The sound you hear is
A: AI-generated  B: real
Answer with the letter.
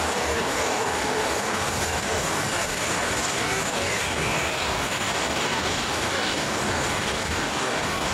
A